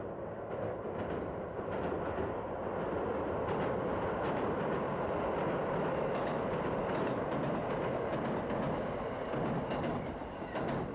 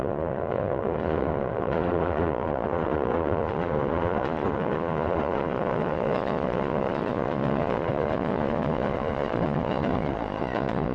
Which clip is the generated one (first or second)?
second